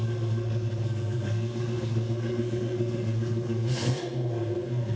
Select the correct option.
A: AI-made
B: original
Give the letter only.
A